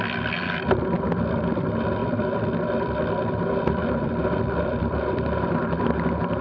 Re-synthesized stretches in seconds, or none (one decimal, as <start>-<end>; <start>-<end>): 2.0-5.5